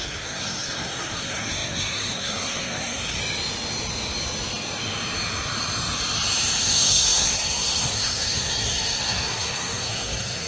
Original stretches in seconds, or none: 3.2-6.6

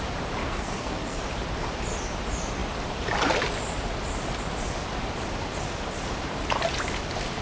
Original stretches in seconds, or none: 0.0-0.4; 1.2-7.4

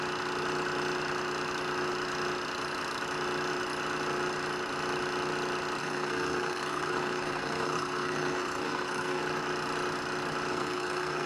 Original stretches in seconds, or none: 0.0-5.8; 9.2-10.5

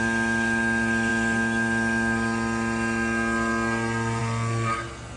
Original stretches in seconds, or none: 0.0-5.2

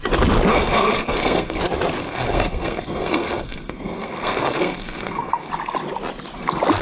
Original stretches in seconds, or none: 0.0-0.5; 1.6-2.0; 5.5-6.8

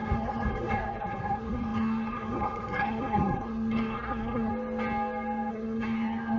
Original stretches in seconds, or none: 4.5-5.5

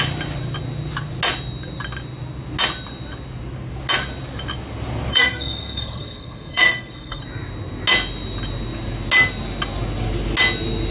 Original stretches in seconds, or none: 0.0-5.1; 7.2-10.9